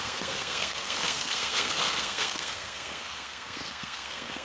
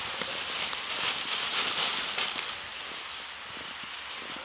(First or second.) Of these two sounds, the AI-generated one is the first